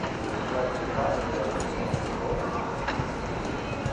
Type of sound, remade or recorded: recorded